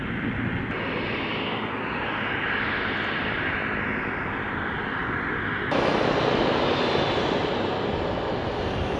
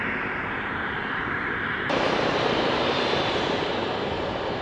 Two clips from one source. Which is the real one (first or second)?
first